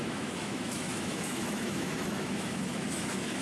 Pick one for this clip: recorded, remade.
remade